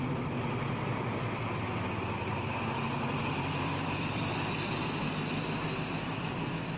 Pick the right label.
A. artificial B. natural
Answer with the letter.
B